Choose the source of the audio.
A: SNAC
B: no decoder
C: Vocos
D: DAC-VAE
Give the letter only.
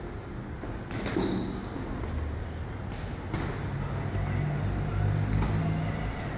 B